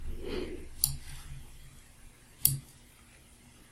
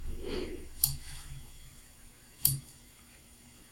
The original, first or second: first